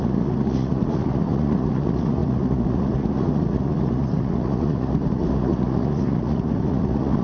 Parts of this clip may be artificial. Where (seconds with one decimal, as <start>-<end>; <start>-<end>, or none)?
0.0-7.2